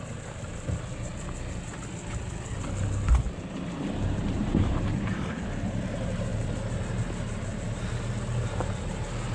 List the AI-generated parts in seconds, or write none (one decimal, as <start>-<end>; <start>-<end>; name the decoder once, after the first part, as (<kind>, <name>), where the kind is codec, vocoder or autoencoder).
0.0-0.5 (vocoder, BigVGAN v2); 3.1-6.3; 6.8-7.5; 8.5-9.3